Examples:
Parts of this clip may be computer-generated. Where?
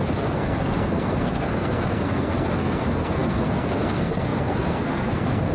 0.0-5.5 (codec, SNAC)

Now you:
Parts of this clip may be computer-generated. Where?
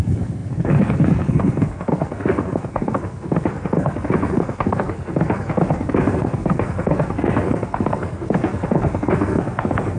0.0-10.0 (codec, SNAC)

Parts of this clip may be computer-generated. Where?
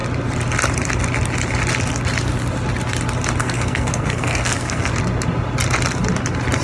3.4-4.9 (codec, SNAC)